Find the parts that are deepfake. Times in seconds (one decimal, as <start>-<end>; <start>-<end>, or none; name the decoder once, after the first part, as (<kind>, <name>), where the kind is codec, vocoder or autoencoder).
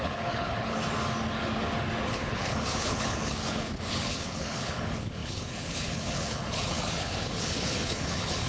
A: 0.0-0.8 (codec, HILCodec); 2.1-8.5